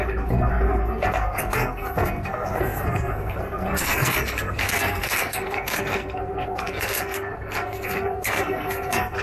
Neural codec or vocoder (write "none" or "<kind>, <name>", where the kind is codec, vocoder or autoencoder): codec, SNAC